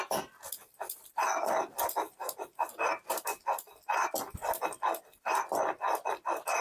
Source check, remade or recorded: recorded